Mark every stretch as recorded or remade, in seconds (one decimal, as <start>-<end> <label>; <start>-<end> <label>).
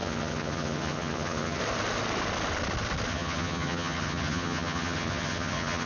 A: 0.0-1.6 remade; 1.6-3.1 recorded; 3.1-5.9 remade